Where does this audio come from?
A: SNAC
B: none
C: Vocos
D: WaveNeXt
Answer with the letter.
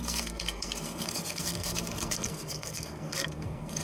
A